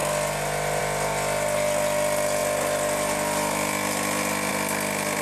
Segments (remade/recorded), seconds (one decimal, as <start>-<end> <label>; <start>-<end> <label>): 0.0-5.2 recorded